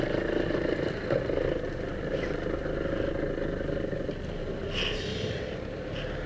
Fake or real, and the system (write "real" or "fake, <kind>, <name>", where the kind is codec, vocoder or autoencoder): real